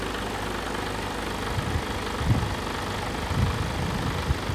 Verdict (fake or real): real